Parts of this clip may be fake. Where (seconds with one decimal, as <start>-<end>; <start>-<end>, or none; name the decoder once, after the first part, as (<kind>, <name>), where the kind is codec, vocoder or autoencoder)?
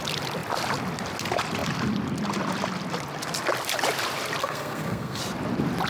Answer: 4.4-5.2 (codec, SNAC)